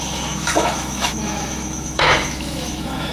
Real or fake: fake